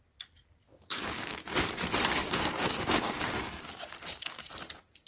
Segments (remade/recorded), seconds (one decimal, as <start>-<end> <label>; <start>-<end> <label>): 0.0-0.7 recorded; 0.7-1.4 remade; 1.4-2.2 recorded; 2.2-4.4 remade; 4.4-5.1 recorded